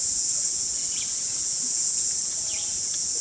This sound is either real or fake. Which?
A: fake